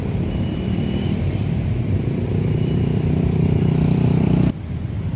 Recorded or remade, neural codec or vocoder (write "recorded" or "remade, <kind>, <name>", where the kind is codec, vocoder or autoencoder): remade, vocoder, BigVGAN v2